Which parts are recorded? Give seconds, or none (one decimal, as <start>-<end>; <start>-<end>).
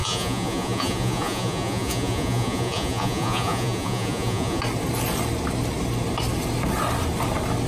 4.6-7.7